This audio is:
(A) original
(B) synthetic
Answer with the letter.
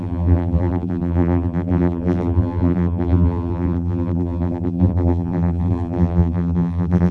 B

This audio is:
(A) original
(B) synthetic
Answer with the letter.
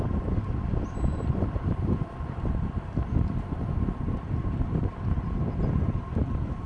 B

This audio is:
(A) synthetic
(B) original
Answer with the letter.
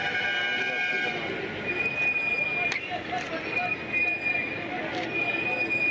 B